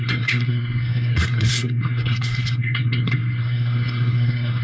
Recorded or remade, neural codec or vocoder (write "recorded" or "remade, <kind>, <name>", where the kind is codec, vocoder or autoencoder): remade, codec, SNAC